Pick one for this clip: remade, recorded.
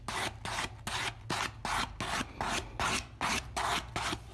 recorded